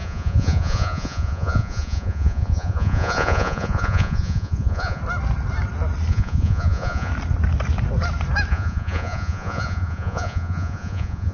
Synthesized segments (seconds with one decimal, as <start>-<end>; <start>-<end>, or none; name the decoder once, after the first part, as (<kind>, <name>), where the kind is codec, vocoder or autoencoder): 0.0-5.0 (vocoder, Vocos); 6.1-7.1; 8.5-11.3